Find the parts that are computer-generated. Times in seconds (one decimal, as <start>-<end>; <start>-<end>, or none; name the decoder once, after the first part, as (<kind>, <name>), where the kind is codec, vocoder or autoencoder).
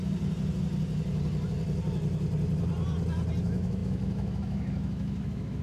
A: 3.4-5.6 (autoencoder, DAC-VAE)